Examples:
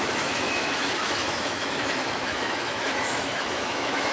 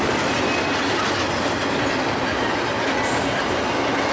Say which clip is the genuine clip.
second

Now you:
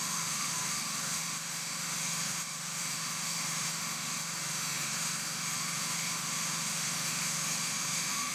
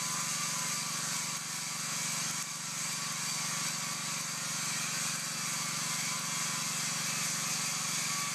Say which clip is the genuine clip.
second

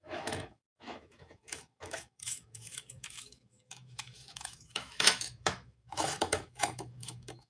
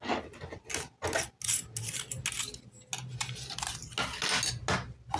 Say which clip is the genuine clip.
second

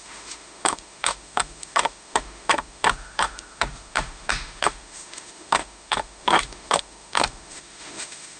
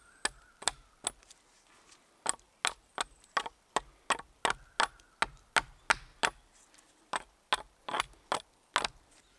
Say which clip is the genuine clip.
second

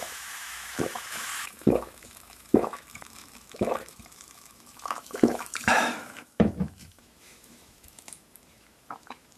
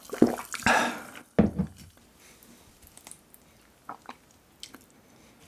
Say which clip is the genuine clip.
second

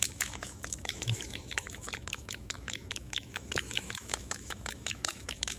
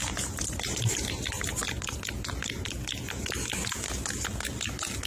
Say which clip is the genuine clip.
second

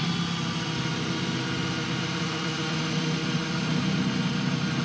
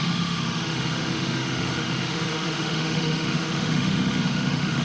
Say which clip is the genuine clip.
first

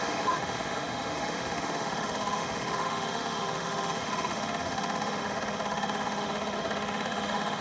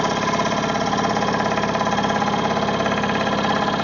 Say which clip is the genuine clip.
second